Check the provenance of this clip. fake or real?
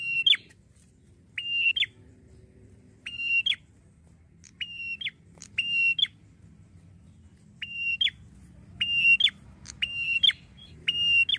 real